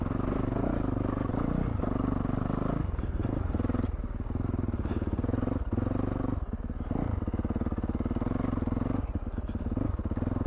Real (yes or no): yes